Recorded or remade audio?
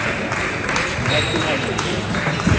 remade